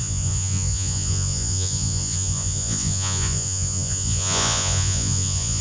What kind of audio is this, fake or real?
fake